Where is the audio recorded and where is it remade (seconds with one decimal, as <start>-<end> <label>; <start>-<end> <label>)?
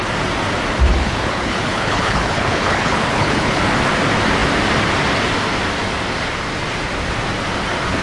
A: 0.0-0.9 recorded; 0.9-3.6 remade; 3.6-8.0 recorded